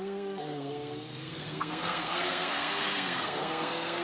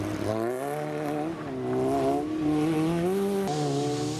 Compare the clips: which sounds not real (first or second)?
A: first